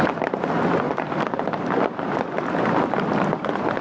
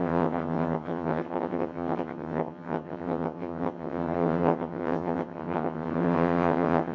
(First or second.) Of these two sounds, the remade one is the second